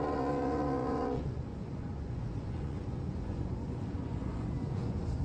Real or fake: fake